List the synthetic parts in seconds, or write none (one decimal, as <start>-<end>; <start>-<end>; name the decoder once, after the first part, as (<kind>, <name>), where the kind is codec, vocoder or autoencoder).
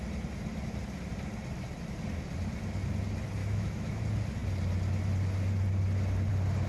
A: 3.4-4.0 (autoencoder, DAC-VAE)